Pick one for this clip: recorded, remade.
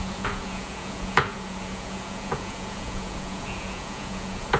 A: remade